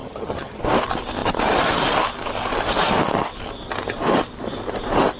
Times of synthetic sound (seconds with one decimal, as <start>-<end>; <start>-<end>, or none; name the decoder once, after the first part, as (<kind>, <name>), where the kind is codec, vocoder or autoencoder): 0.0-0.6 (vocoder, HiFi-GAN)